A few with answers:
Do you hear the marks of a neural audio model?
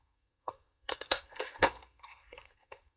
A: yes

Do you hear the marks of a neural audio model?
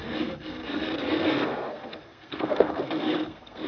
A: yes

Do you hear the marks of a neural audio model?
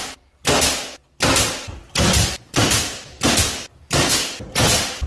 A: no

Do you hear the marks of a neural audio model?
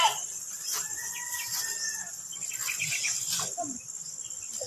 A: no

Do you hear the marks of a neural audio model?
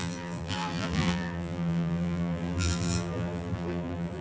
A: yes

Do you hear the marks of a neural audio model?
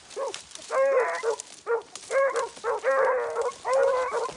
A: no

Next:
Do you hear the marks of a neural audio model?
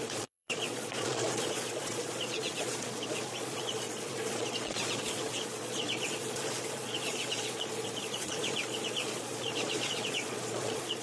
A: yes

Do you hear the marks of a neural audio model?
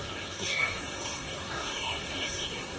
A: yes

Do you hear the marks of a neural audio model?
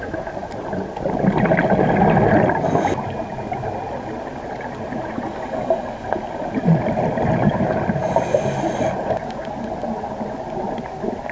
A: no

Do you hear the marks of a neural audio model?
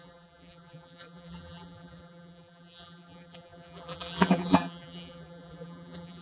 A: yes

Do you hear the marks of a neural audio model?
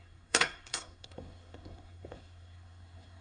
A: yes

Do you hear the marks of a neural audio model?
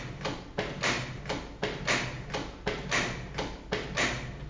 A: no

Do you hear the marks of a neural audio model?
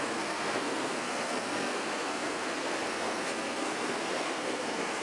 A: yes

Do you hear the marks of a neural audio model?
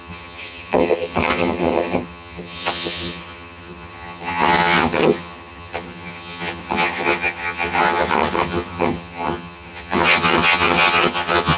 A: yes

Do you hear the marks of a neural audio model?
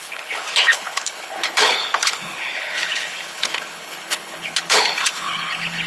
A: yes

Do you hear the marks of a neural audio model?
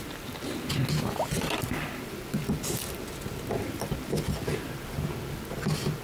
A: no